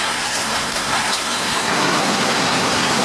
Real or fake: fake